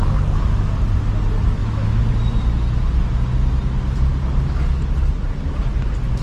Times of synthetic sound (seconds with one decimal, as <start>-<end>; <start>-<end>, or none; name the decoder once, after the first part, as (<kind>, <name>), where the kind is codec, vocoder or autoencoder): 1.6-2.1 (autoencoder, DAC-VAE)